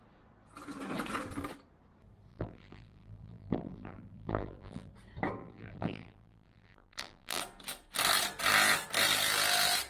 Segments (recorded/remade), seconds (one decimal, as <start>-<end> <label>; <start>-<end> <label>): 0.0-2.3 recorded; 2.3-4.9 remade; 4.9-5.4 recorded; 5.4-7.4 remade; 7.4-9.9 recorded